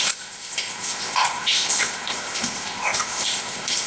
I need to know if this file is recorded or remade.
remade